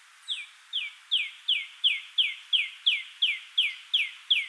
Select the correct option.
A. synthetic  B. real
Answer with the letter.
B